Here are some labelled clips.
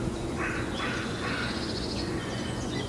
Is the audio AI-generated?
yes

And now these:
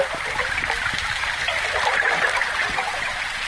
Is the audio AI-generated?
no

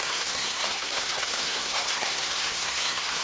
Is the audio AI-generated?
yes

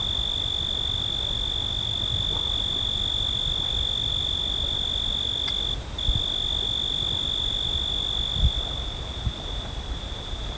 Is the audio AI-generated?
no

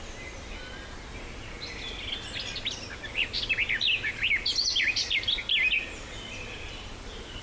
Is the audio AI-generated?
no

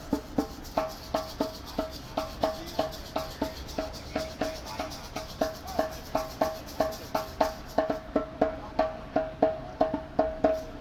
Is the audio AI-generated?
no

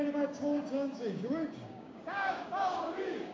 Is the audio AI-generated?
yes